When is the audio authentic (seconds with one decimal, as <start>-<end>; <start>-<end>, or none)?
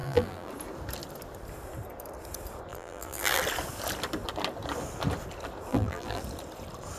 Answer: 0.5-2.7; 3.4-5.7; 6.2-7.0